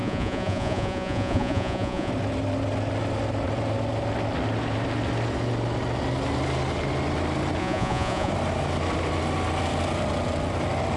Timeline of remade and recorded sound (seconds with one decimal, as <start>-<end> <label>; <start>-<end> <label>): 0.0-2.1 remade; 2.1-7.6 recorded; 7.6-8.3 remade; 8.3-11.0 recorded